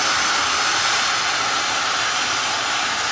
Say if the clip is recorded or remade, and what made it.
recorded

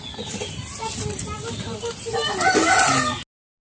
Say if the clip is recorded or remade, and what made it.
recorded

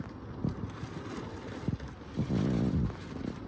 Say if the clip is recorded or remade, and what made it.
recorded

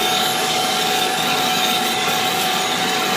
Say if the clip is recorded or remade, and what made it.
remade, codec, DAC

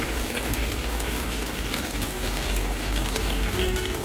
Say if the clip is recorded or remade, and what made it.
remade, codec, DAC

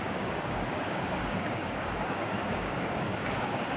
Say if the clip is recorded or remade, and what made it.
remade, codec, DAC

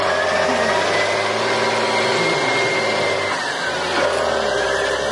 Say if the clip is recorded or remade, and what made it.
recorded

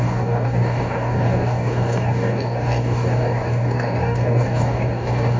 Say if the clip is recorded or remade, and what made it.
remade, codec, DAC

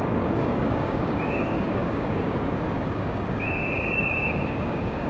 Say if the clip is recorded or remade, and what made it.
remade, codec, DAC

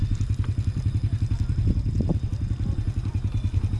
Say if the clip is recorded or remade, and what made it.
recorded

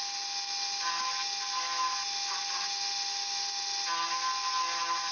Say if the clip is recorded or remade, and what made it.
recorded